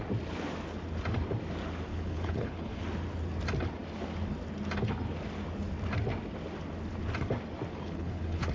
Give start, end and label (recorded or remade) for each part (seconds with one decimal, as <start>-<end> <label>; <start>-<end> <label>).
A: 0.0-1.9 recorded; 1.9-2.8 remade; 2.8-7.7 recorded; 7.7-8.5 remade